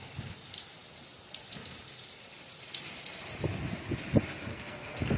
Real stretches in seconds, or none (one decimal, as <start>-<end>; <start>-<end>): 0.0-4.5